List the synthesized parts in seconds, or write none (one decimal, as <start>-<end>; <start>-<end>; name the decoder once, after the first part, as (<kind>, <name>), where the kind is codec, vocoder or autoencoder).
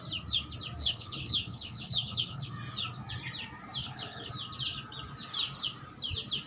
0.8-2.5 (codec, HILCodec); 3.8-4.3